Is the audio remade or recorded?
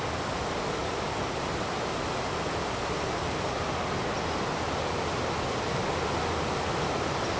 recorded